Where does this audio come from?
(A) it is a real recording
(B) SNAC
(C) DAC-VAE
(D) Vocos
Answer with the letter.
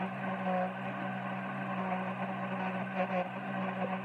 A